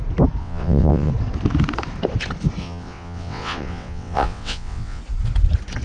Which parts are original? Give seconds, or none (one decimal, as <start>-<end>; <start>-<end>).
0.0-0.4; 1.1-2.6; 5.0-5.8